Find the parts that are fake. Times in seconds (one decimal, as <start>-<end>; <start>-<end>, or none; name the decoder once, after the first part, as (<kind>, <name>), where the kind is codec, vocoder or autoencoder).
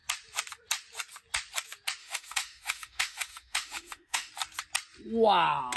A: 2.0-4.3 (autoencoder, DAC-VAE)